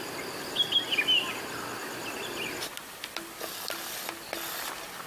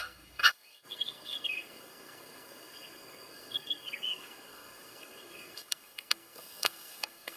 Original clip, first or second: first